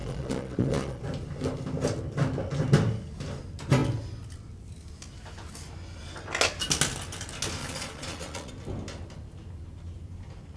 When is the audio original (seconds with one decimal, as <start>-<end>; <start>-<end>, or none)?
1.0-7.6; 8.5-10.6